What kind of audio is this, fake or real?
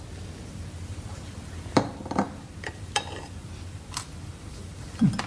fake